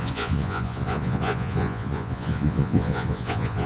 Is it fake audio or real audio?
fake